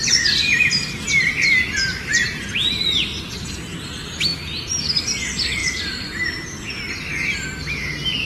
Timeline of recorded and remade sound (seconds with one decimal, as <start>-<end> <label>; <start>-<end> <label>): 0.0-3.1 recorded; 3.1-3.8 remade; 3.8-4.3 recorded; 4.3-4.8 remade; 4.8-5.6 recorded; 5.6-6.9 remade; 6.9-8.3 recorded